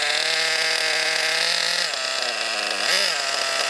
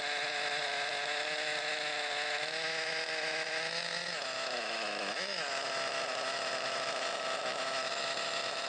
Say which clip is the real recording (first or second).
first